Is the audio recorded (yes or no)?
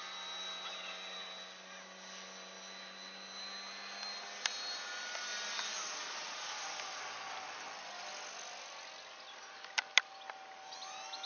yes